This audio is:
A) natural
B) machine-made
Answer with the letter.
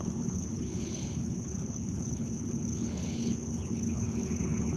B